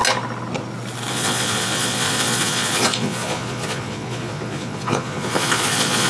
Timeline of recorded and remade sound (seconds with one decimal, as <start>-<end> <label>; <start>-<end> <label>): 0.0-1.1 recorded; 1.1-6.1 remade